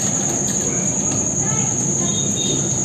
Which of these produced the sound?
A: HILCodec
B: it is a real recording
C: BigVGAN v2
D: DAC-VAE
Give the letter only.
B